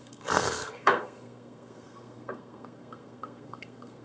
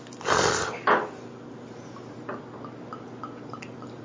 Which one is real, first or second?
second